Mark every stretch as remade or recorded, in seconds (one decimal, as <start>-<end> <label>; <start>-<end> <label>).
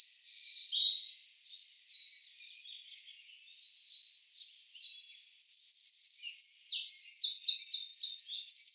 0.0-8.7 recorded